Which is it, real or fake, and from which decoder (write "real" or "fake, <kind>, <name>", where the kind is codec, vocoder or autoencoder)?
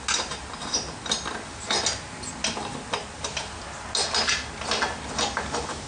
real